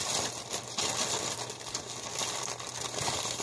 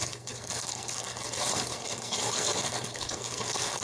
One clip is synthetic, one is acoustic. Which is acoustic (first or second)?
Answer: first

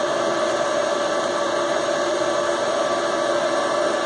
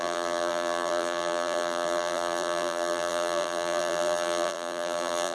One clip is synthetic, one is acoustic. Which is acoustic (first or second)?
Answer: first